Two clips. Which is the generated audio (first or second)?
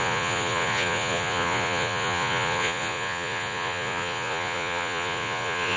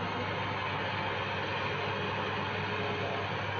first